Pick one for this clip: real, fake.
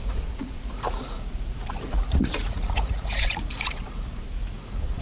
fake